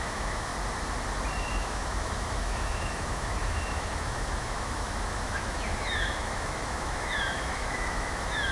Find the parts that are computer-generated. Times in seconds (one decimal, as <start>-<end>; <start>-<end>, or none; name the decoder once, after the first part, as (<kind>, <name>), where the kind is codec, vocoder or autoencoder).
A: 0.0-0.5 (autoencoder, DAC-VAE); 1.4-8.5